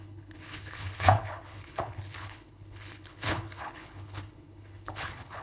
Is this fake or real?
fake